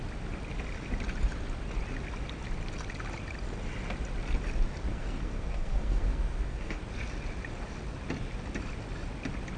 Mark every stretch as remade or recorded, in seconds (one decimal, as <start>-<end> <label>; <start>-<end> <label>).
0.0-4.9 recorded; 4.9-6.8 remade; 6.8-9.6 recorded